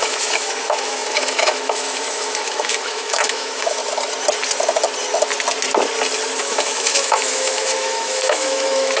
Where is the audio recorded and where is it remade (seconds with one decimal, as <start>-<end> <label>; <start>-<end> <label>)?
0.0-3.8 remade; 3.8-6.4 recorded; 6.4-9.0 remade